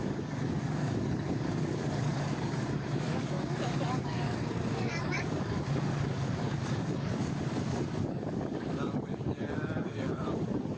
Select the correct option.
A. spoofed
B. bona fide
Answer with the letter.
A